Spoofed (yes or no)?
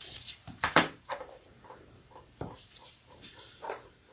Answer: yes